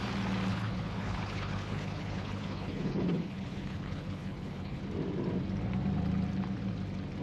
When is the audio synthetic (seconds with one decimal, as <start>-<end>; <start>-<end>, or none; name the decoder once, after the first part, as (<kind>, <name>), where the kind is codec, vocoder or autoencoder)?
0.5-4.8 (codec, HILCodec)